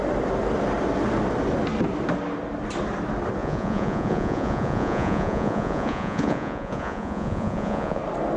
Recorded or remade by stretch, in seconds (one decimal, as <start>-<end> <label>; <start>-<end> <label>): 0.0-3.4 recorded; 3.4-8.0 remade; 8.0-8.4 recorded